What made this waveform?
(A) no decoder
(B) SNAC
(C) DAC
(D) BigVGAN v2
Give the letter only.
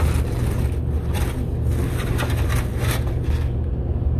A